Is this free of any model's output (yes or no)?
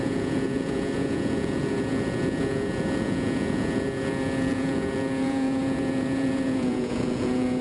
no